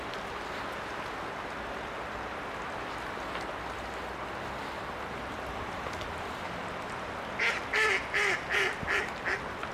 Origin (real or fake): real